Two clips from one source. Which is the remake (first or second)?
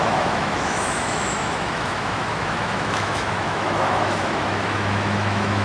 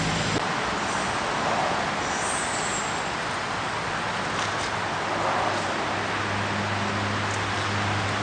first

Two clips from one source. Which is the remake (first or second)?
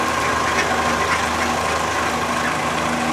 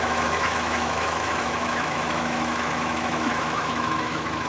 second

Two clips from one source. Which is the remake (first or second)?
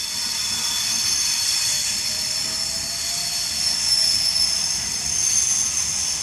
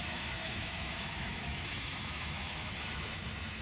second